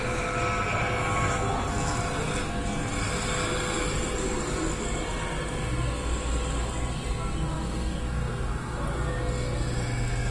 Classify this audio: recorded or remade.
recorded